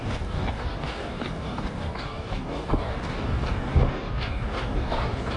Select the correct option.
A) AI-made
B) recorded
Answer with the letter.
A